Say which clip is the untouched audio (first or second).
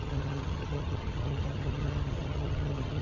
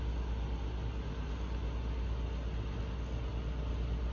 second